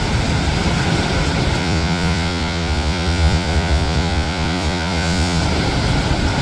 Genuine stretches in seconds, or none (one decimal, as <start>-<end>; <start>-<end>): 0.0-1.6; 5.4-6.4